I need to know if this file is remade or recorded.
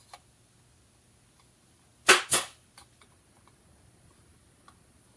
recorded